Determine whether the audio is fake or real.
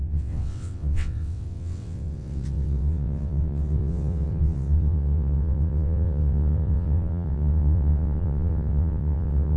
fake